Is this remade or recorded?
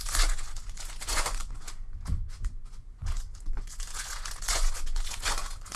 remade